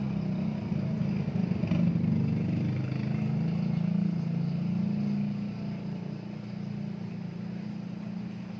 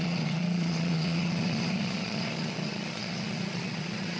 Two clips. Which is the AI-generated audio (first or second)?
second